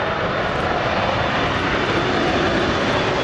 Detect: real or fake real